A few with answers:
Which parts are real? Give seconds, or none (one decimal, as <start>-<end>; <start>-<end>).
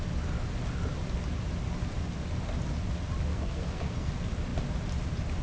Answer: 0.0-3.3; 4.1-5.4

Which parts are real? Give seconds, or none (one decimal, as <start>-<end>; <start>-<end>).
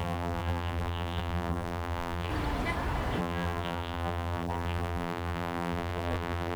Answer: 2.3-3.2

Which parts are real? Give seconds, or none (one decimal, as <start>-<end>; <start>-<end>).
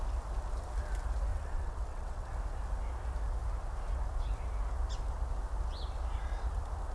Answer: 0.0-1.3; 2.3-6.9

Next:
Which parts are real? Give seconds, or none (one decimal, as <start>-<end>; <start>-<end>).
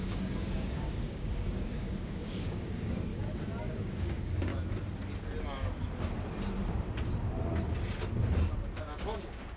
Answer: 3.1-3.7; 4.5-8.8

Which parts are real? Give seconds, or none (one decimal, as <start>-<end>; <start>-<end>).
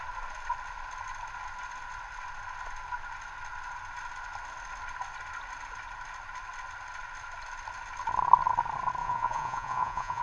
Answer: 0.0-9.0